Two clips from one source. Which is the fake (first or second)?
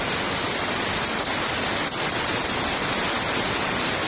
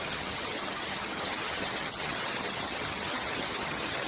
second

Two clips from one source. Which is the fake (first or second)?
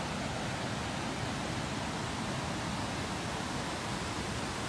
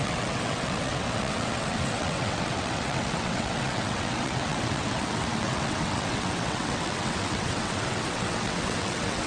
second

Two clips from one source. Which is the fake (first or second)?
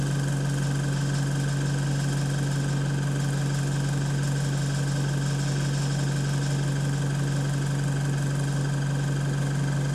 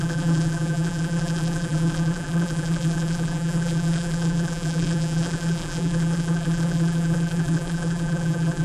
second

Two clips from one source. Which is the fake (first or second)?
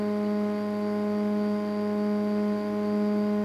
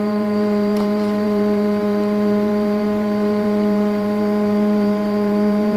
second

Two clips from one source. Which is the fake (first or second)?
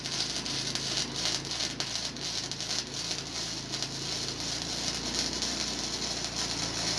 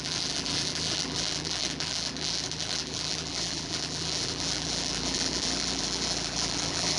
second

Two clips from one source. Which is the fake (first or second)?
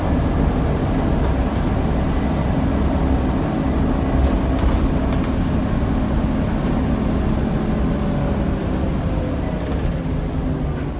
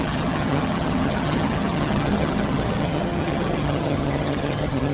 second